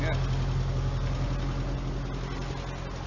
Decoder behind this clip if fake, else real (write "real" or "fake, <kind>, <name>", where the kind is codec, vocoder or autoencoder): real